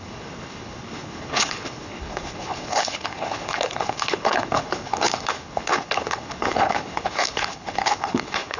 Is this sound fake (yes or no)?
yes